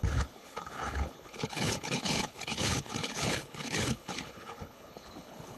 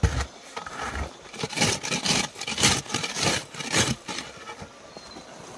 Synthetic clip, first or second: first